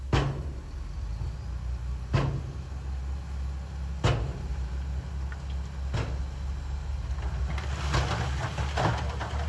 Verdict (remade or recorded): recorded